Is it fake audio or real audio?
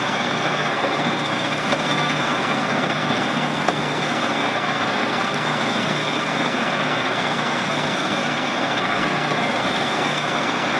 fake